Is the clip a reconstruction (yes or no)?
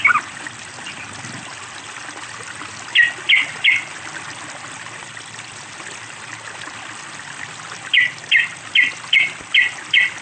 no